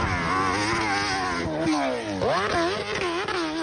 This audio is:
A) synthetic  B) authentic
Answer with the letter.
B